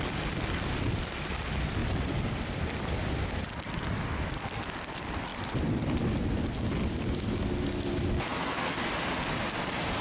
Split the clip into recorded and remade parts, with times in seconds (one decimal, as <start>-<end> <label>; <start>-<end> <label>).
0.0-1.8 recorded; 1.8-2.5 remade; 2.5-5.3 recorded; 5.3-5.8 remade; 5.8-10.0 recorded